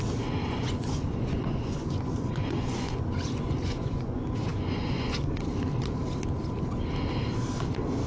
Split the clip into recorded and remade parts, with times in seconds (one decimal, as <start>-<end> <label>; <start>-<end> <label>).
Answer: 0.0-0.4 recorded; 0.4-5.3 remade; 5.3-8.1 recorded

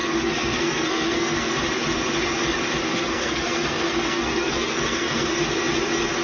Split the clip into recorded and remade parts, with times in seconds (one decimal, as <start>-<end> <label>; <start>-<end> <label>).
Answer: 0.0-1.5 remade; 1.5-2.8 recorded; 2.8-5.4 remade; 5.4-6.2 recorded

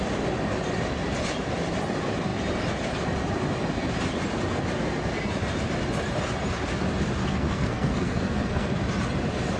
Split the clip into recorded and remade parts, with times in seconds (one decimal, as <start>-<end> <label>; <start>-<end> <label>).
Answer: 0.0-7.2 recorded; 7.2-8.8 remade; 8.8-9.6 recorded

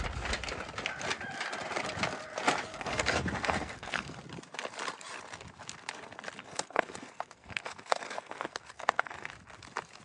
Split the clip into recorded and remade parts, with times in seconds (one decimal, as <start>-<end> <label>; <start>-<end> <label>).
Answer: 0.0-2.7 recorded; 2.7-4.2 remade; 4.2-6.4 recorded; 6.4-9.3 remade; 9.3-10.0 recorded

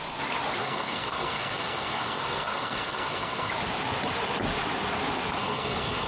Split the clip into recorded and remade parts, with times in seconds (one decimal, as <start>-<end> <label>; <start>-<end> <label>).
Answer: 0.0-0.6 recorded; 0.6-3.5 remade; 3.5-5.4 recorded; 5.4-6.1 remade

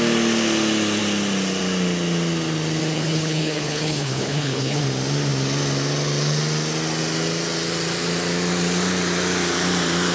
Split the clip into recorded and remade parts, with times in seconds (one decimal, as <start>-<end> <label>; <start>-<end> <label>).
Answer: 0.0-2.8 recorded; 2.8-4.8 remade; 4.8-10.1 recorded

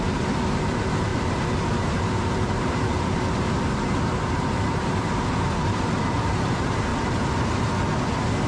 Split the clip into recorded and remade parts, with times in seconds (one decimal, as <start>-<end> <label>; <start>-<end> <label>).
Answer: 0.0-6.9 remade; 6.9-8.5 recorded